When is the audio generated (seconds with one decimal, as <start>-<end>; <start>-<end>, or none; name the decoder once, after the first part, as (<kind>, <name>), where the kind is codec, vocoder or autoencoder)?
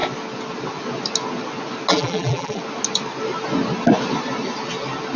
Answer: 1.9-2.6 (vocoder, BigVGAN v2)